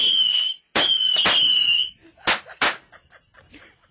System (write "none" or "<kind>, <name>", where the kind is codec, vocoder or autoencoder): none